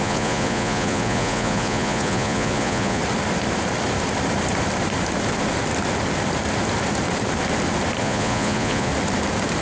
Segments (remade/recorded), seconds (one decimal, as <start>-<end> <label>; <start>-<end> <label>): 0.0-3.0 remade; 3.0-8.0 recorded; 8.0-8.9 remade; 8.9-9.6 recorded